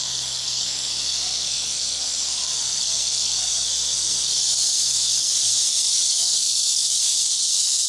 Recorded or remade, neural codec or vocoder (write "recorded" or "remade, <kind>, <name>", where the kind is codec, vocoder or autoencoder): remade, codec, SNAC